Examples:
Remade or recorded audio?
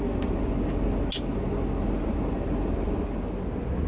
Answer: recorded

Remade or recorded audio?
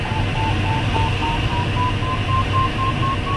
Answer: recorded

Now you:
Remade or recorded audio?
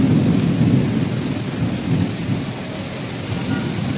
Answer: recorded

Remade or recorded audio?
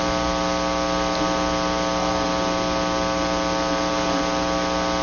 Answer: recorded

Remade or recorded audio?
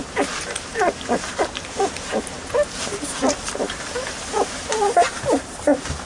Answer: remade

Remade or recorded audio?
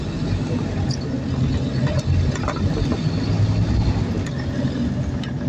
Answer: recorded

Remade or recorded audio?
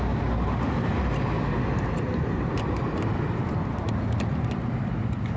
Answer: recorded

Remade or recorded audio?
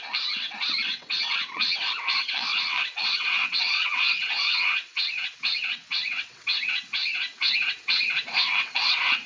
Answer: remade